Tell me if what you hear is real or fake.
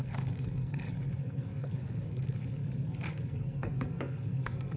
fake